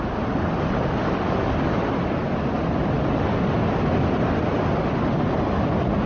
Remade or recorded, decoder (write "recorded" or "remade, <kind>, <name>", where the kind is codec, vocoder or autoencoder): recorded